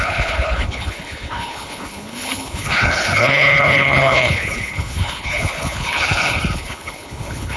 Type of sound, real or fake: fake